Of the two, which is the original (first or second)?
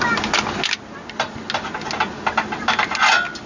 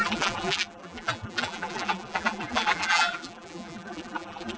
first